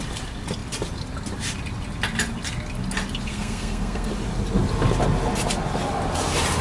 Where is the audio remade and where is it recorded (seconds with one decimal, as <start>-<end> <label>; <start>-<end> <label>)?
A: 0.0-3.3 recorded; 3.3-4.1 remade; 4.1-6.6 recorded